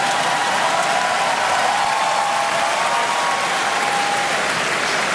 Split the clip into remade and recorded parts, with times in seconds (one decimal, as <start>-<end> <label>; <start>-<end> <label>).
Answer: 0.0-5.1 recorded